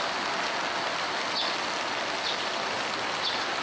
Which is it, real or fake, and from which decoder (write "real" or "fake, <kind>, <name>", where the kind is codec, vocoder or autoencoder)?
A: real